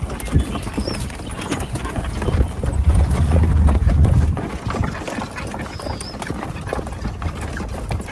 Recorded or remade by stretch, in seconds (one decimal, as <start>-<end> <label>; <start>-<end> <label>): 0.0-1.3 recorded; 1.3-2.0 remade; 2.0-2.7 recorded; 2.7-4.6 remade; 4.6-8.1 recorded